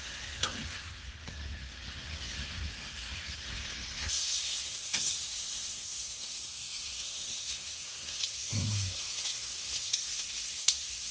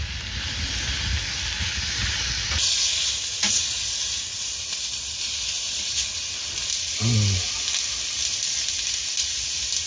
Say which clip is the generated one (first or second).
first